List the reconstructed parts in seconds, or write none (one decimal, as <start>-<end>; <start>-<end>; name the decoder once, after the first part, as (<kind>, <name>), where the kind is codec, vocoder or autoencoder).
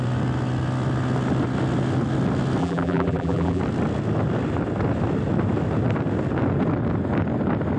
2.6-3.6 (vocoder, BigVGAN v2)